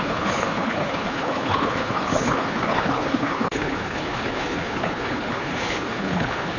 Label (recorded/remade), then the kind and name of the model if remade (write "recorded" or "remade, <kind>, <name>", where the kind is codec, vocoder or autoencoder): remade, codec, HILCodec